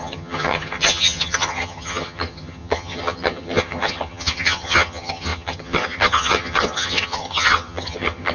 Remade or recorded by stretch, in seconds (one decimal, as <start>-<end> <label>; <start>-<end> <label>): 0.0-8.3 remade